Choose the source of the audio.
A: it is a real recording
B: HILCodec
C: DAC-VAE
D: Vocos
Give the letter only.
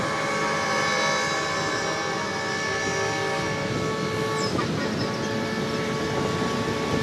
A